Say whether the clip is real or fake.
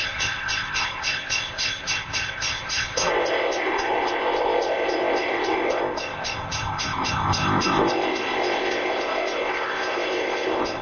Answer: fake